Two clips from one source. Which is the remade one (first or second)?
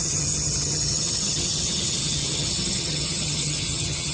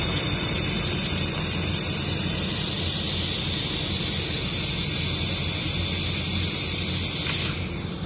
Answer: first